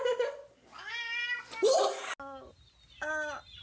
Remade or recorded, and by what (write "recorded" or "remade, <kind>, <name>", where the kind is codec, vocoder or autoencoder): recorded